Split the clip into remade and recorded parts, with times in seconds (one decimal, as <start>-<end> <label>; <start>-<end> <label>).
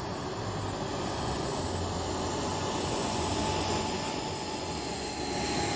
0.0-0.9 recorded; 0.9-1.6 remade; 1.6-2.3 recorded; 2.3-5.1 remade; 5.1-5.8 recorded